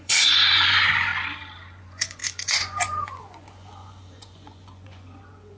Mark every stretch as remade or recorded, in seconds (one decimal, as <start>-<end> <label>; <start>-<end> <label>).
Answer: 0.0-1.1 remade; 1.1-1.8 recorded; 1.8-5.6 remade